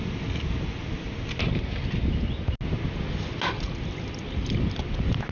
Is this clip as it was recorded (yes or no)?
yes